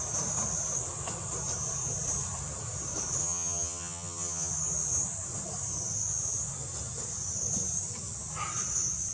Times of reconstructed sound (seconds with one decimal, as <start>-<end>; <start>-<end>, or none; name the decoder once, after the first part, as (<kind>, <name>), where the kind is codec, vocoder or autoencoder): 3.2-4.5 (vocoder, HiFi-GAN)